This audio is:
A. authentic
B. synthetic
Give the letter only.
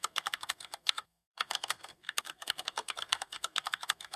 B